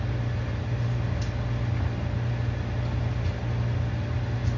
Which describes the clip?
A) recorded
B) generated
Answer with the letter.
A